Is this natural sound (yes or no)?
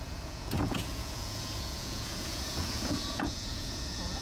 no